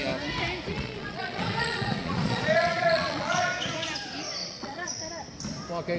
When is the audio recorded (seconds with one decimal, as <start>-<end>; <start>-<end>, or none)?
0.0-0.7; 3.4-4.4; 5.0-6.0